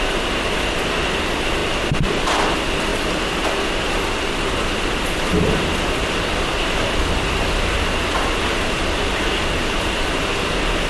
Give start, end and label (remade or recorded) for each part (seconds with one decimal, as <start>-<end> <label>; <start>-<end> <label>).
0.0-2.9 recorded; 2.9-6.1 remade; 6.1-10.9 recorded

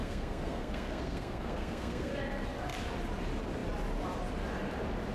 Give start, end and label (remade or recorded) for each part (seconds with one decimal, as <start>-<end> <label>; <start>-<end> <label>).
0.0-2.1 remade; 2.1-5.1 recorded

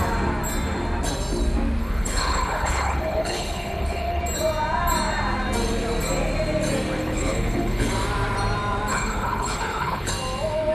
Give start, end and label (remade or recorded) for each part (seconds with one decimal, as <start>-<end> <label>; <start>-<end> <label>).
0.0-1.8 recorded; 1.8-4.2 remade; 4.2-7.0 recorded; 7.0-7.9 remade; 7.9-8.9 recorded; 8.9-10.1 remade; 10.1-10.7 recorded